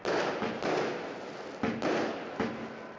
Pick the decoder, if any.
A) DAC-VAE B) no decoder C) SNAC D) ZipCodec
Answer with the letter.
B